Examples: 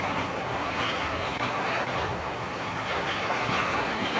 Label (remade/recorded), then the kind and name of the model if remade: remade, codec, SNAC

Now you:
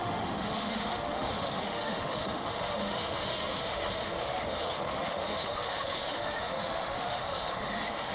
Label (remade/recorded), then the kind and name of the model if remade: remade, autoencoder, DAC-VAE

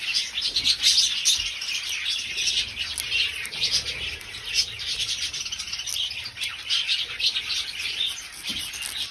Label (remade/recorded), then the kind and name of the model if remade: recorded